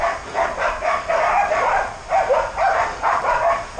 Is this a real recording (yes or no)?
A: yes